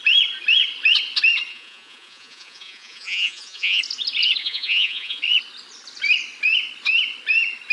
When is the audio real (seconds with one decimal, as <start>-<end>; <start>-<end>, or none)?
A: 0.0-1.5; 3.8-4.4; 5.2-7.7